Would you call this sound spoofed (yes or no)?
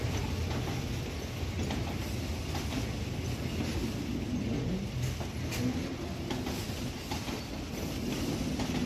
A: no